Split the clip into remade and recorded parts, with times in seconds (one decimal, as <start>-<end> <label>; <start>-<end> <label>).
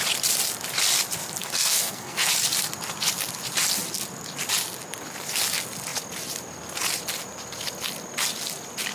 0.0-1.4 recorded; 1.4-2.3 remade; 2.3-8.9 recorded